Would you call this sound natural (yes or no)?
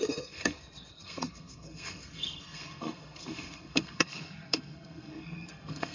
no